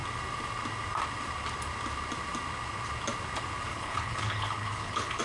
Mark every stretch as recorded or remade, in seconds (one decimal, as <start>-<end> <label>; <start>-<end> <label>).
0.0-3.7 recorded; 3.7-5.2 remade